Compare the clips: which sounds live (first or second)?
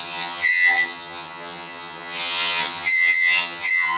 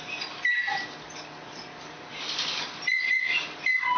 second